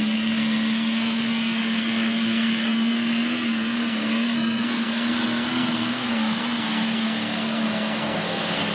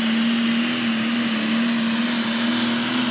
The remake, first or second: first